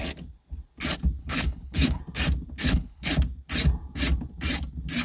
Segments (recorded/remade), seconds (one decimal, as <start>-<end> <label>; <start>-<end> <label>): 0.0-1.2 recorded; 1.2-2.0 remade; 2.0-2.6 recorded; 2.6-3.1 remade; 3.1-5.0 recorded